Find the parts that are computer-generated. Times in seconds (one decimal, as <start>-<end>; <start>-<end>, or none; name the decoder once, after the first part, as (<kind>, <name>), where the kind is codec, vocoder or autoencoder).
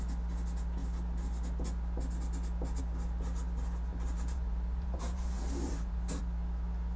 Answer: 3.9-6.2 (vocoder, BigVGAN v2)